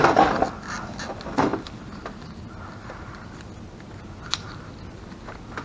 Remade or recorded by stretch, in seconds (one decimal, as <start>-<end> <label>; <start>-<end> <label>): 0.0-5.6 recorded